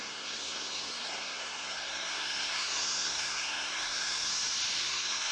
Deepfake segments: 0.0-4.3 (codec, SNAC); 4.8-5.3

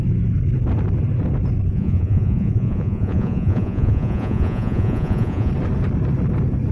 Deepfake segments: 1.7-5.5 (vocoder, Vocos)

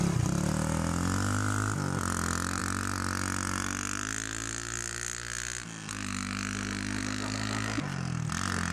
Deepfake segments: none

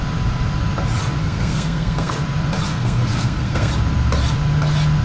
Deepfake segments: 1.2-2.2 (codec, SNAC); 2.7-3.7